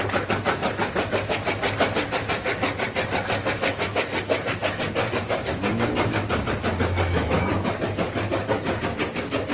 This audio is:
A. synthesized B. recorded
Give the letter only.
B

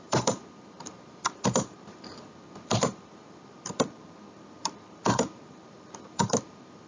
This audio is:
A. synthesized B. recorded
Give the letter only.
A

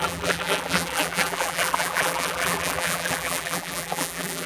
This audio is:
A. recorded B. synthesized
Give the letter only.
B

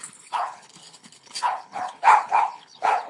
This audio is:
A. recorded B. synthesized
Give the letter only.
B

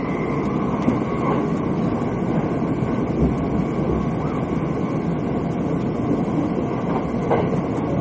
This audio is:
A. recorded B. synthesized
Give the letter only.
A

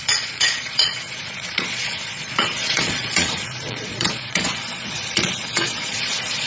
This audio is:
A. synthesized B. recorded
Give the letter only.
A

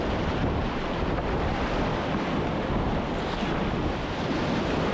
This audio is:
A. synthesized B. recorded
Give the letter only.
B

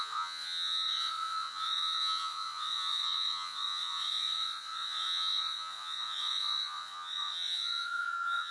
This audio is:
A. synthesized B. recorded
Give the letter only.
A